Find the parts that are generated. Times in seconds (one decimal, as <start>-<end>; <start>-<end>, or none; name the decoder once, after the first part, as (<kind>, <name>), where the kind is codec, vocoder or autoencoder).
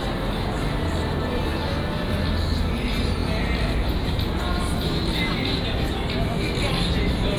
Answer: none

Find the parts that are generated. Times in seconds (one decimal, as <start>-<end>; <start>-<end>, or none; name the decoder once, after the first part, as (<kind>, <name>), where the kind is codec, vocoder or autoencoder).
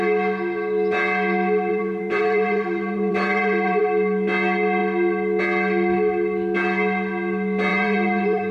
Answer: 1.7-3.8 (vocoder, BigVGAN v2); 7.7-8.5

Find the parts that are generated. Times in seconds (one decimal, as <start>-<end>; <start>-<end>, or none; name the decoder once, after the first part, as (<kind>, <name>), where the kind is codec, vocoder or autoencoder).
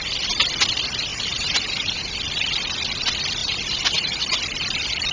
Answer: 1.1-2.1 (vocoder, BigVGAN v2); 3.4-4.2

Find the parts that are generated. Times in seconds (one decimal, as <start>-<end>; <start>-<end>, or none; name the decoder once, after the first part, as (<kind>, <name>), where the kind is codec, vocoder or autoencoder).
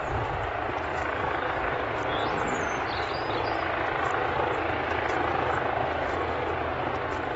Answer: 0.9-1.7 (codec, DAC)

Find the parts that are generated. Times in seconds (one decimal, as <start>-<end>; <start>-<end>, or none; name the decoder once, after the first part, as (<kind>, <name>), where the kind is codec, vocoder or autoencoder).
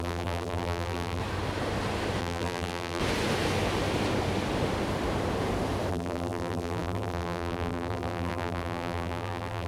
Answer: 0.0-1.2 (vocoder, BigVGAN v2); 2.2-3.0; 5.9-9.7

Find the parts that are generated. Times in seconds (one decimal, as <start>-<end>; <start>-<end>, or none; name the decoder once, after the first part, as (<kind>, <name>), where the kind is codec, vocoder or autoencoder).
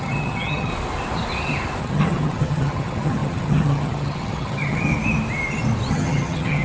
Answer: 0.0-0.7 (vocoder, HiFi-GAN); 1.8-4.9; 5.9-6.6